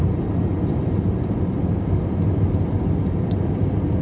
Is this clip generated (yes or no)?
no